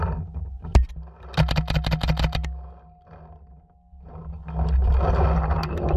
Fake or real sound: real